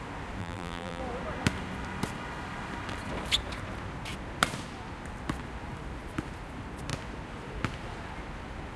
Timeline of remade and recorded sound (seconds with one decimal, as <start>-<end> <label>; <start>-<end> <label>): 0.0-0.4 recorded; 0.4-1.0 remade; 1.0-8.8 recorded